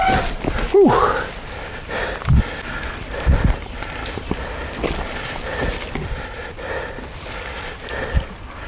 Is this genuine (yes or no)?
yes